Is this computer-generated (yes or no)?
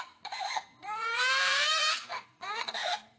yes